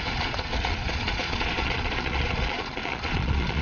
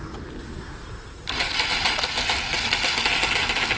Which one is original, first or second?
second